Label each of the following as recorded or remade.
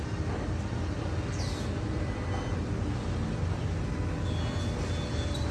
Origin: recorded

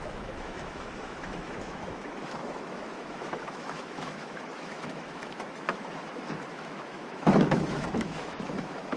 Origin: remade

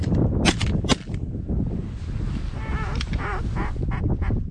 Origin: recorded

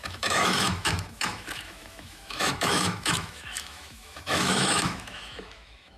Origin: remade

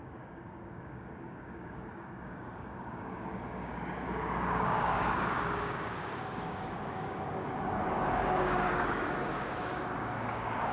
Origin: remade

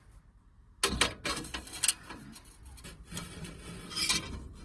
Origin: recorded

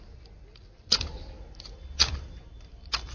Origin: recorded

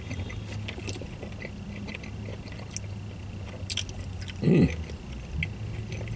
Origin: recorded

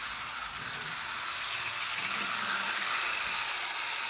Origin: recorded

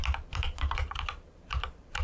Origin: remade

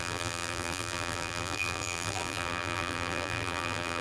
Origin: remade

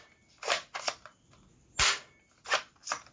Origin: recorded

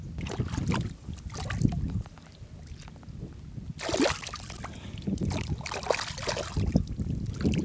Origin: recorded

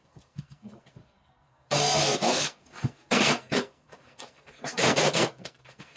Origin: remade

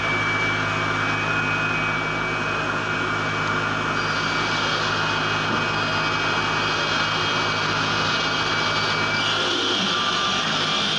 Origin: recorded